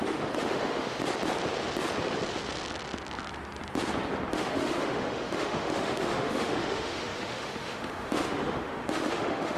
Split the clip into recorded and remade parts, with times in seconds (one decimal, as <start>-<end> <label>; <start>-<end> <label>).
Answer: 0.0-1.0 remade; 1.0-4.3 recorded; 4.3-9.6 remade